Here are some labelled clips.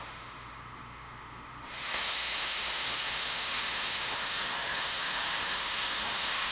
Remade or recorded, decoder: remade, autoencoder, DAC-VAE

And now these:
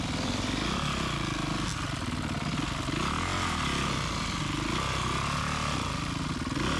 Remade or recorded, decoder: recorded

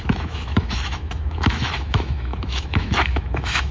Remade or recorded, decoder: remade, autoencoder, DAC-VAE